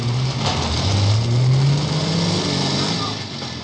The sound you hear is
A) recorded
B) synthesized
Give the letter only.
A